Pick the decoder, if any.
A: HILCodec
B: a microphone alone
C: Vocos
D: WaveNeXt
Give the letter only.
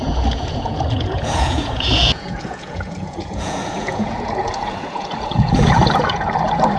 C